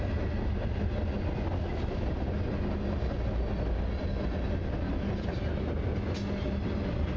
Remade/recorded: recorded